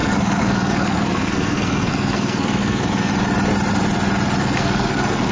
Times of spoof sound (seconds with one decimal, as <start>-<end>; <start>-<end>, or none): 0.0-3.1; 4.4-5.3